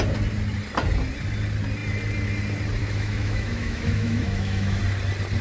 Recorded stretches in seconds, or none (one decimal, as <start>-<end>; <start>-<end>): 0.0-2.8; 4.8-5.4